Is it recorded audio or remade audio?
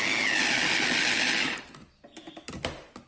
recorded